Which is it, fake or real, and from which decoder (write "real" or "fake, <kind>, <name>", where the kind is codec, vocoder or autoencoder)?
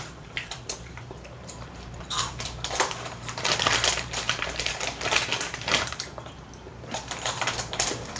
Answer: fake, vocoder, BigVGAN v2